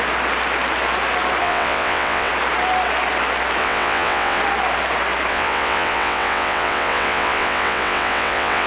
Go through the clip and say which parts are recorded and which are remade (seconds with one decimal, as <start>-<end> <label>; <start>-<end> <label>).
0.0-1.4 recorded; 1.4-2.3 remade; 2.3-3.6 recorded; 3.6-4.4 remade; 4.4-5.3 recorded; 5.3-8.7 remade